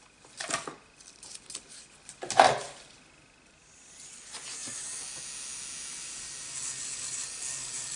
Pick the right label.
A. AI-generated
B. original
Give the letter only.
B